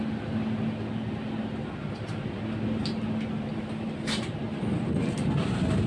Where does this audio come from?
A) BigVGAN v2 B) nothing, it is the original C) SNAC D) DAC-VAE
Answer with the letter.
B